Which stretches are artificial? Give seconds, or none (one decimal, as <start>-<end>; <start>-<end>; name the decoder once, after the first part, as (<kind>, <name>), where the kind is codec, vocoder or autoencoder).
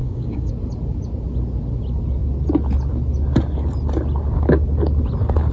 0.0-0.5 (codec, DAC)